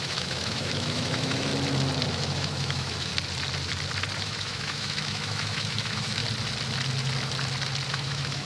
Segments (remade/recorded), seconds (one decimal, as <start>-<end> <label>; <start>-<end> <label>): 0.0-1.5 remade; 1.5-2.1 recorded; 2.1-3.1 remade; 3.1-4.2 recorded; 4.2-6.2 remade; 6.2-7.9 recorded; 7.9-8.5 remade